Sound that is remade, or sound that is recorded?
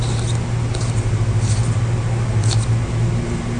recorded